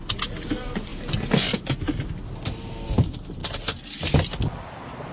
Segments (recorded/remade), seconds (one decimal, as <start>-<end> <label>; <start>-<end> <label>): 0.0-5.1 recorded